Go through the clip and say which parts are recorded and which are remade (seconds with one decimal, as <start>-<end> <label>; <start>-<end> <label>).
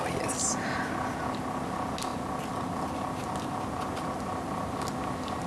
0.0-5.5 recorded